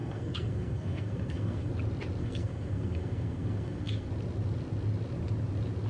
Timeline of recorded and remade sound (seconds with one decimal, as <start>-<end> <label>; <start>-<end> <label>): 0.0-1.7 remade; 1.7-2.2 recorded; 2.2-4.1 remade; 4.1-5.9 recorded